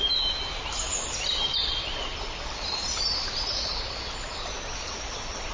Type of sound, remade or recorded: recorded